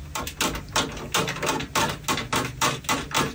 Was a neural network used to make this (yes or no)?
no